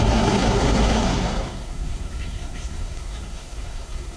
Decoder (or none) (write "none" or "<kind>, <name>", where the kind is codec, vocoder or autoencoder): codec, SNAC